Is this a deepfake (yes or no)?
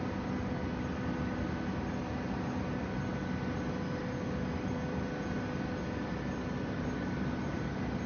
no